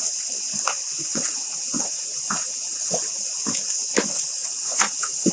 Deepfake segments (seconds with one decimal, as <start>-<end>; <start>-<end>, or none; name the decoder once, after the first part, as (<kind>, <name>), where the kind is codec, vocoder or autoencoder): 1.1-3.2 (vocoder, WaveNeXt); 4.4-5.3